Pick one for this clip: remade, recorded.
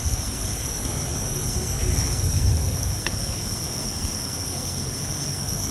remade